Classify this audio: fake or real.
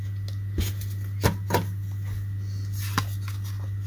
real